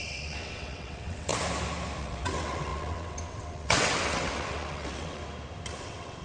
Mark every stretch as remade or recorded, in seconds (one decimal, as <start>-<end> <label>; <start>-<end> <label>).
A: 0.0-1.3 remade; 1.3-2.0 recorded; 2.0-5.2 remade; 5.2-5.8 recorded; 5.8-6.2 remade